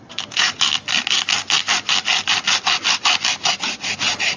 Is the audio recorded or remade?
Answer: recorded